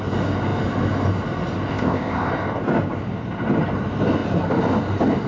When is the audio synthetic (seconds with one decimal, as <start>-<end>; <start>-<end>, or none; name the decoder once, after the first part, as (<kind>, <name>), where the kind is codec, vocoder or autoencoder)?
1.7-2.3 (codec, ZipCodec)